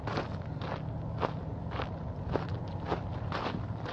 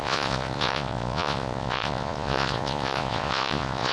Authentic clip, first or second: first